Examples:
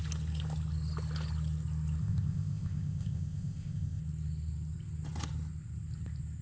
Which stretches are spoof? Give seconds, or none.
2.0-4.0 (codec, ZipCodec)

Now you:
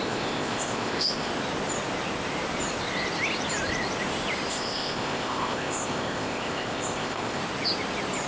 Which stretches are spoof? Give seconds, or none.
0.0-1.3 (codec, ZipCodec); 4.5-7.4